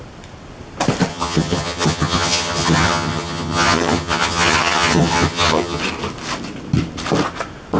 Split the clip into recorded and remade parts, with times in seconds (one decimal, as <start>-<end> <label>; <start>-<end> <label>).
0.0-1.1 recorded; 1.1-5.8 remade; 5.8-7.8 recorded